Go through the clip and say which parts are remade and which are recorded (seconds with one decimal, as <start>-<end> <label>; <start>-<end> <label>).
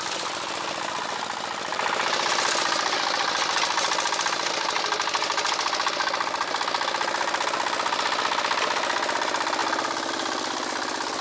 0.0-11.2 recorded